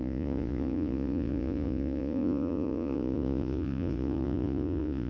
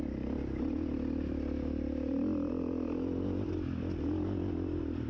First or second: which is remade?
first